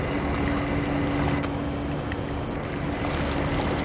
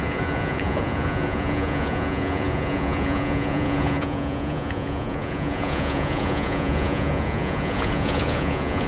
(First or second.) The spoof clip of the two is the second